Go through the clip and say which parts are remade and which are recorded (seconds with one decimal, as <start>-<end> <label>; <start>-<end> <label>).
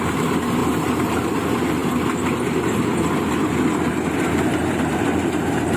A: 0.0-0.6 recorded; 0.6-1.2 remade; 1.2-4.6 recorded; 4.6-5.8 remade